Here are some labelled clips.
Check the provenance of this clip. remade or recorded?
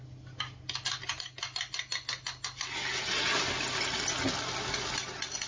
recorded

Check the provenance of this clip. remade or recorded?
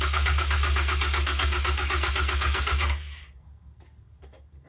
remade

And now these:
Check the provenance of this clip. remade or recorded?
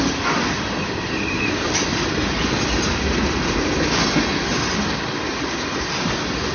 recorded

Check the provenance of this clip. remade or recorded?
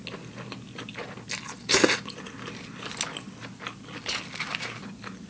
recorded